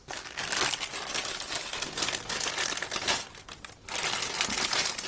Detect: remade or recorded recorded